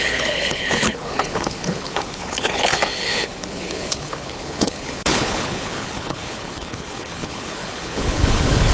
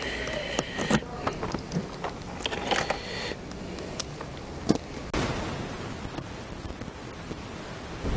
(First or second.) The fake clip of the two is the first